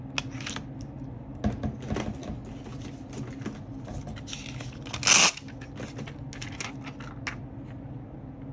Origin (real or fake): real